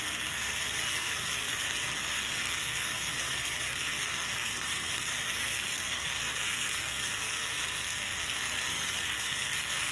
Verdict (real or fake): fake